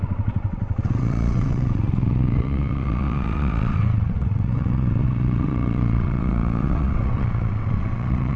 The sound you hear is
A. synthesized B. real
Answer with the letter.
A